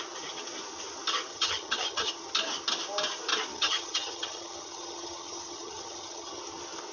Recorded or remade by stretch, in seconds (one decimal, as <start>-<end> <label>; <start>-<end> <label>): 0.0-1.3 recorded; 1.3-2.1 remade; 2.1-3.5 recorded; 3.5-6.4 remade; 6.4-6.9 recorded